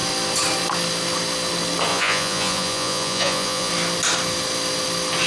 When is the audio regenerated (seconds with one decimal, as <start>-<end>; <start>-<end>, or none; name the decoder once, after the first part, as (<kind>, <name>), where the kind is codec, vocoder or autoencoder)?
1.9-3.7 (vocoder, Vocos)